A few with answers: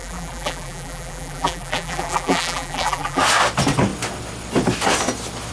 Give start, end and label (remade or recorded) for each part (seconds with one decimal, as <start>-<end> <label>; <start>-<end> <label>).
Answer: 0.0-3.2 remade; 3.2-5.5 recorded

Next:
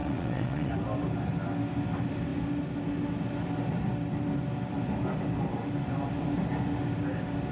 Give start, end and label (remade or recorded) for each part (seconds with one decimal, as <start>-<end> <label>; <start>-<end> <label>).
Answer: 0.0-0.7 remade; 0.7-7.5 recorded

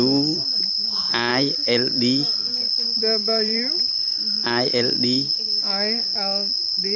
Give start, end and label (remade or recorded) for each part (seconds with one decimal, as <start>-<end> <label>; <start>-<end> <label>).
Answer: 0.0-1.3 recorded; 1.3-4.7 remade; 4.7-7.0 recorded

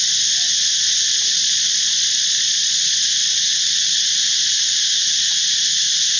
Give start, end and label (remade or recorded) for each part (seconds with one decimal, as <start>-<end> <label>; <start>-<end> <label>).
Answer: 0.0-1.4 recorded; 1.4-3.0 remade; 3.0-6.2 recorded